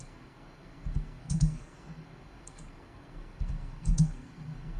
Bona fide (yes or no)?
no